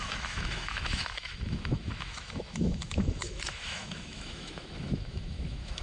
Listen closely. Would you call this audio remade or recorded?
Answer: remade